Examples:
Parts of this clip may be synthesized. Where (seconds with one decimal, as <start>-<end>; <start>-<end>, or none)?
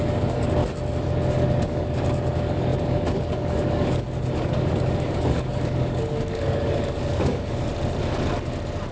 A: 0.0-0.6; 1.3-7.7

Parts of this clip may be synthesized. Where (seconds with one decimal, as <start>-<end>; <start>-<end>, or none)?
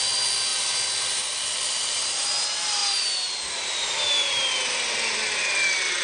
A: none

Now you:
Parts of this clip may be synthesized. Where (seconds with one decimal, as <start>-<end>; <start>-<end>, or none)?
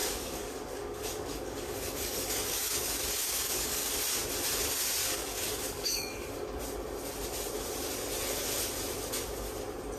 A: 0.0-4.0; 5.0-6.6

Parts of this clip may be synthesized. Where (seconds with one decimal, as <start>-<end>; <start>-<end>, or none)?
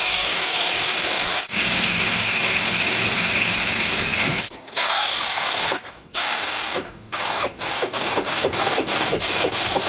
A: 0.0-9.9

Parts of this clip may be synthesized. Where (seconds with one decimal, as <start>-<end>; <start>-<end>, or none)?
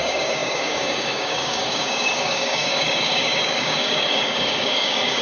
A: 0.0-5.2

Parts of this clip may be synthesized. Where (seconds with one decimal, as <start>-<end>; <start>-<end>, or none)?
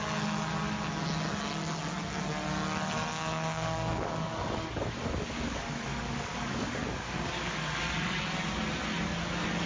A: 3.1-8.2